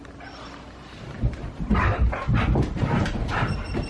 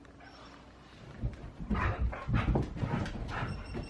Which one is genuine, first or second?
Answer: second